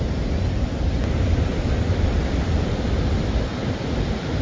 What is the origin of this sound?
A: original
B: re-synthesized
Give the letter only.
A